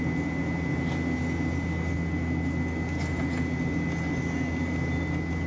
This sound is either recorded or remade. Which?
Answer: recorded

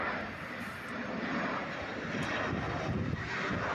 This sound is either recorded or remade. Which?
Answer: recorded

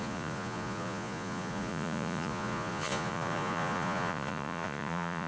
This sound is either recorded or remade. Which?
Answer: remade